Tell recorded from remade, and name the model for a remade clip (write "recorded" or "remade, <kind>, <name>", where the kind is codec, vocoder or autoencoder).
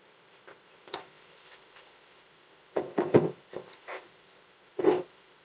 remade, codec, ZipCodec